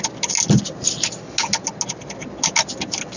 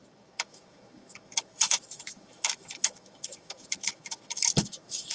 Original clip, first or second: first